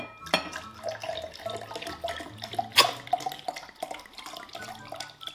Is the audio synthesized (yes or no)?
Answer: no